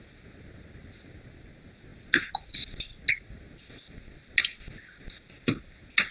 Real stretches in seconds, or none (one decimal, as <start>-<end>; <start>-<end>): 0.0-6.1